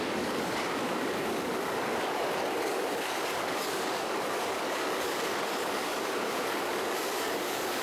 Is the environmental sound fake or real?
fake